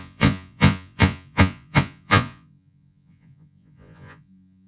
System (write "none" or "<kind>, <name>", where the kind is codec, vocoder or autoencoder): vocoder, Vocos